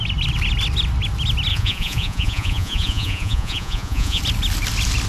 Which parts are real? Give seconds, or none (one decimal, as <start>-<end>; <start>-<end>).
0.0-1.5; 4.2-5.1